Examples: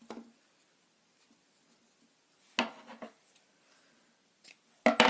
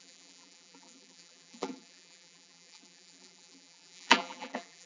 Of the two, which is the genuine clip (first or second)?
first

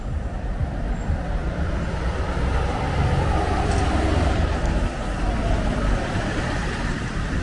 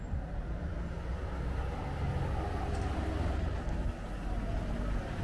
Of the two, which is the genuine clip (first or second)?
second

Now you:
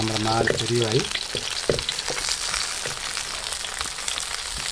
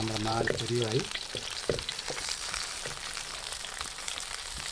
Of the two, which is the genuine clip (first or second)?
first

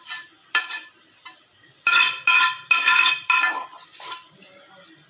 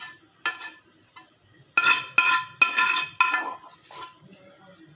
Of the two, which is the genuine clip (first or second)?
second